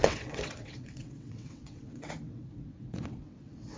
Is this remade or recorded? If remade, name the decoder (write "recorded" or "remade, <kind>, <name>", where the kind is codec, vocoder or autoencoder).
remade, vocoder, WaveNeXt